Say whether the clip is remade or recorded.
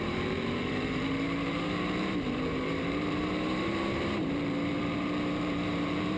remade